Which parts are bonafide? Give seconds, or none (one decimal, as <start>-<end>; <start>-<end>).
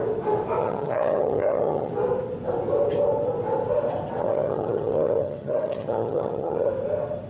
0.0-0.6; 1.9-4.2; 6.7-7.3